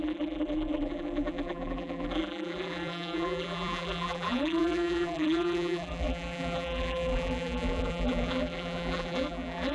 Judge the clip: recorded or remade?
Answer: remade